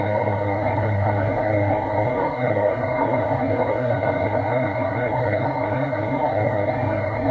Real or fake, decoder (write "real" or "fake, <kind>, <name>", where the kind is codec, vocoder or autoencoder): fake, codec, SNAC